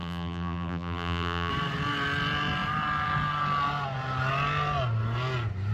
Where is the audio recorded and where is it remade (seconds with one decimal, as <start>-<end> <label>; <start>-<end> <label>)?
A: 0.0-1.5 remade; 1.5-5.7 recorded